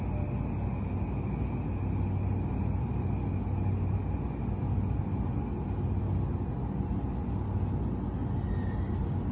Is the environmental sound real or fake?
real